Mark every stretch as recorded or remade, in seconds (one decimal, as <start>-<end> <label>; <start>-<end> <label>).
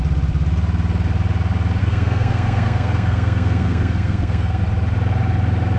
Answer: 0.0-1.8 recorded; 1.8-4.6 remade; 4.6-5.8 recorded